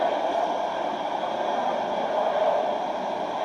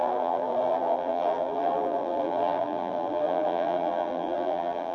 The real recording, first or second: first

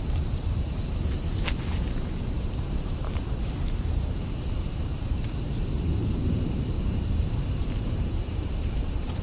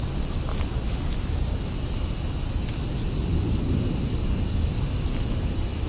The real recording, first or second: second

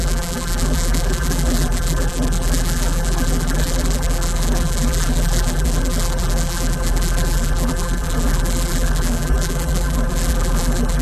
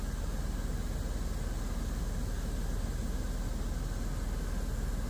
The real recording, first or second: second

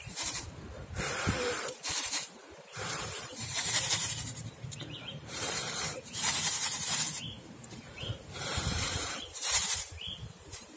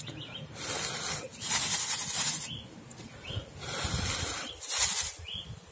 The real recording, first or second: second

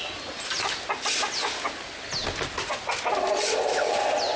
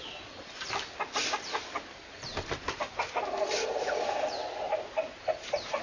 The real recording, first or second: first